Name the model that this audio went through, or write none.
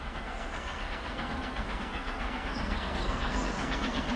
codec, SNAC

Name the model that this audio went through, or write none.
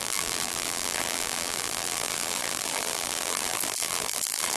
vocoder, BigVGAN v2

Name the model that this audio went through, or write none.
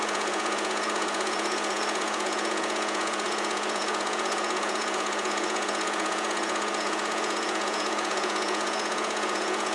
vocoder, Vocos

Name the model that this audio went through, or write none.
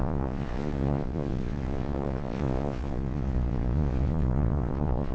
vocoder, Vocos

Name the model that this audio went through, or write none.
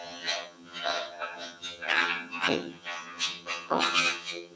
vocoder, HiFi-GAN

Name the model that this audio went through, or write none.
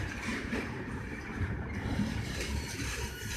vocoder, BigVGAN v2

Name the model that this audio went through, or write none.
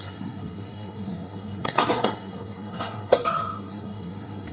codec, SNAC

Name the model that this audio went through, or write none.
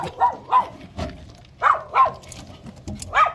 none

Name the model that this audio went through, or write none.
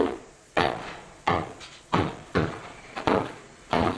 vocoder, Vocos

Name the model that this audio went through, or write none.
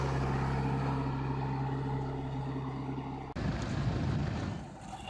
none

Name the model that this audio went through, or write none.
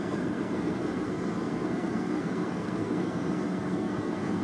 codec, SNAC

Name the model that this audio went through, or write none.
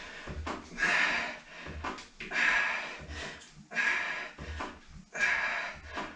none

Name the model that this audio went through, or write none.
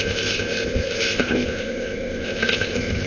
codec, ZipCodec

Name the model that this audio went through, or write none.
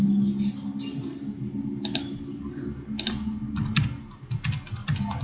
none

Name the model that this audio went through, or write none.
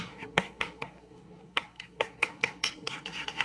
codec, SNAC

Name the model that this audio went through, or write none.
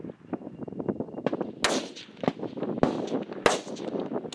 none